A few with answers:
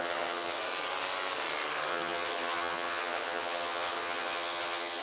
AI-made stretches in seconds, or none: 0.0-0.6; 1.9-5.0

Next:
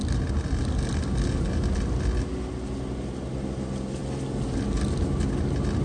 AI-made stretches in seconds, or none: none

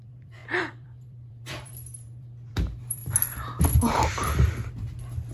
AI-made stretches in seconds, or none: 0.0-3.0

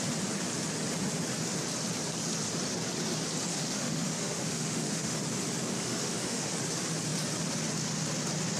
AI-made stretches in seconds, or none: 3.5-5.2; 5.7-6.5

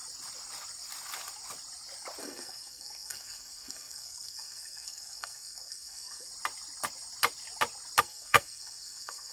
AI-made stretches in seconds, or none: 2.2-6.3; 8.0-9.3

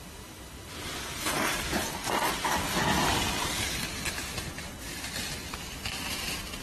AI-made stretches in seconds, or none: 0.0-4.0; 4.8-6.6